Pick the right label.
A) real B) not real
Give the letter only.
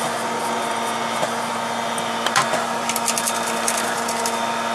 A